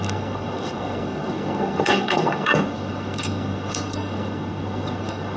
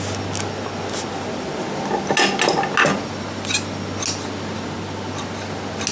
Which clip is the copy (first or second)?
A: first